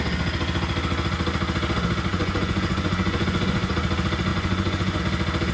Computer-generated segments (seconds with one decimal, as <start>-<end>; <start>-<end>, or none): 2.1-3.7; 4.3-5.0